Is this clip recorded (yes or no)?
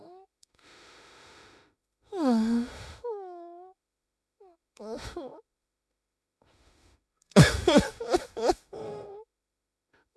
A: no